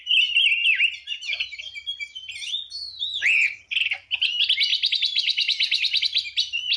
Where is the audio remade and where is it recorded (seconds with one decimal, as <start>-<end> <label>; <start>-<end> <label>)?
0.0-0.6 recorded; 0.6-3.6 remade; 3.6-6.8 recorded